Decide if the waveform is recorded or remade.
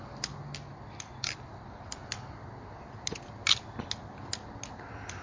recorded